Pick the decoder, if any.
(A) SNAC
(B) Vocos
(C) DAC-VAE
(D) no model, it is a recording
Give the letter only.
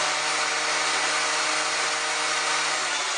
D